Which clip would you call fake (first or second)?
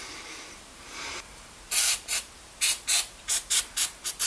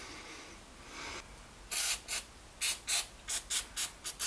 first